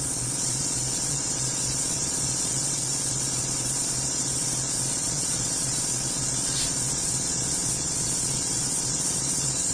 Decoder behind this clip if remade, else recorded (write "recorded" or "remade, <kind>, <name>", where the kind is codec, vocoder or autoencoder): remade, vocoder, Vocos